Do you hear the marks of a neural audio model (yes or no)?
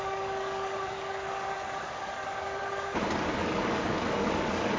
yes